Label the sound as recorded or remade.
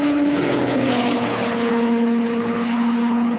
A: remade